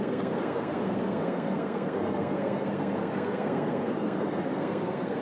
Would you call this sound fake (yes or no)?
yes